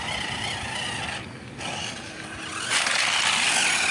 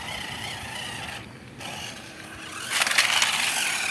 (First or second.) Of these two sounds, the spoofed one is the second